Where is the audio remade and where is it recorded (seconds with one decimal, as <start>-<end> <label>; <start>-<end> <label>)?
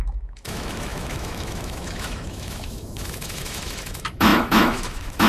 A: 0.0-5.3 remade